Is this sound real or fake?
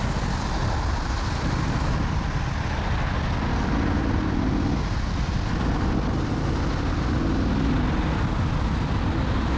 real